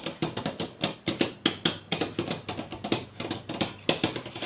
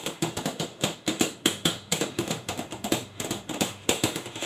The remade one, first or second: second